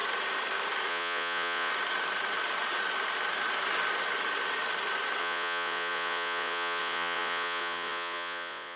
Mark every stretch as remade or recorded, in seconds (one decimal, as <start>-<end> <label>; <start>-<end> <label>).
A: 0.0-0.9 recorded; 0.9-1.7 remade; 1.7-5.2 recorded; 5.2-8.8 remade